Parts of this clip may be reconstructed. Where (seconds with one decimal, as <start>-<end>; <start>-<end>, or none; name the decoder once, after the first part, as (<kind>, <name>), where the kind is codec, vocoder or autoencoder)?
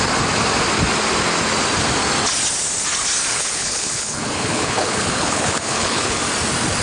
3.3-6.2 (codec, HILCodec)